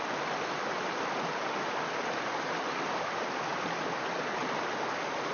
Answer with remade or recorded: recorded